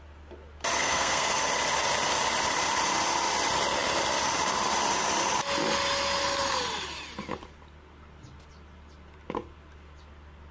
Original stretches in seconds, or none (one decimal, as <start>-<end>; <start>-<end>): 0.0-0.8; 1.4-10.5